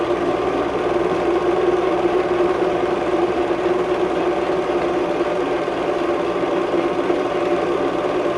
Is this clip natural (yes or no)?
no